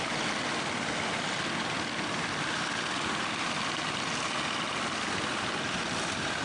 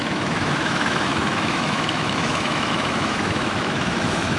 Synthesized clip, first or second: second